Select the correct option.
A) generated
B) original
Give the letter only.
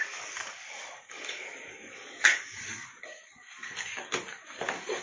A